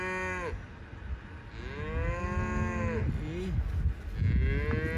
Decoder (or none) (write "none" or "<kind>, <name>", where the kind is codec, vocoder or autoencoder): none